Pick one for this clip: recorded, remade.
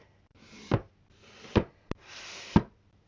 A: recorded